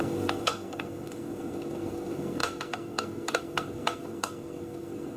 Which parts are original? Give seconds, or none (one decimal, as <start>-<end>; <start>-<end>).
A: none